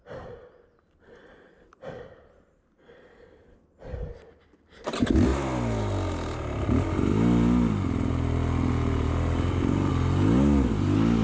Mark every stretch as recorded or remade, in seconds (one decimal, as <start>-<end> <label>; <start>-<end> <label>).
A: 0.0-11.2 recorded